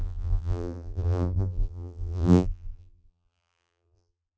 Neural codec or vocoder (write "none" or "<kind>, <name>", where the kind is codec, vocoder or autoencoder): vocoder, BigVGAN v2